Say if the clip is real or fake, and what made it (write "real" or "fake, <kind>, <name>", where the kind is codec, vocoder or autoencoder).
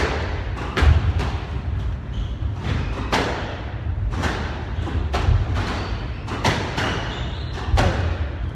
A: real